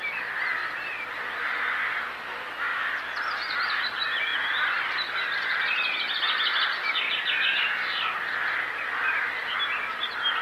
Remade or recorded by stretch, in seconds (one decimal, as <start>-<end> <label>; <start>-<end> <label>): 0.0-2.7 recorded; 2.7-3.2 remade; 3.2-4.3 recorded; 4.3-6.2 remade; 6.2-10.4 recorded

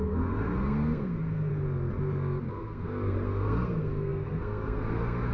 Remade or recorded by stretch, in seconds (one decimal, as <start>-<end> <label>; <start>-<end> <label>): 0.0-1.5 remade; 1.5-2.5 recorded; 2.5-5.3 remade

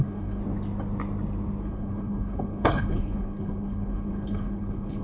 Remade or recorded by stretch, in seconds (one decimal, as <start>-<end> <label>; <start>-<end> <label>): 0.0-0.4 remade; 0.4-1.6 recorded; 1.6-5.0 remade

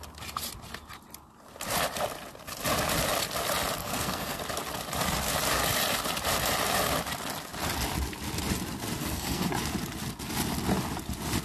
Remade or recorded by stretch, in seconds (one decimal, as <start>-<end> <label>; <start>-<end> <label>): 0.0-3.8 recorded; 3.8-4.4 remade; 4.4-9.0 recorded; 9.0-9.5 remade; 9.5-11.4 recorded

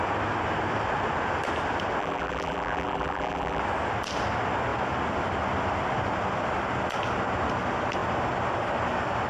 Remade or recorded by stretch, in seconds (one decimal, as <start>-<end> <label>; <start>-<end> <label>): 0.0-2.0 recorded; 2.0-3.6 remade; 3.6-9.3 recorded

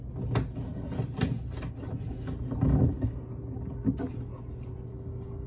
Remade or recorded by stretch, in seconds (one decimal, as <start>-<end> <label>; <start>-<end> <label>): 0.0-4.9 recorded; 4.9-5.5 remade

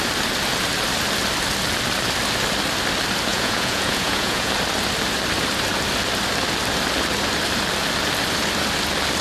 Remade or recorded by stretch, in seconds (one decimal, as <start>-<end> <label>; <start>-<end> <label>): 0.0-3.3 recorded; 3.3-4.5 remade; 4.5-9.2 recorded